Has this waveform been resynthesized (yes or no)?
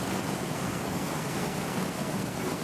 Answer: yes